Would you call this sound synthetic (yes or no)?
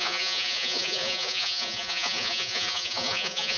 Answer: yes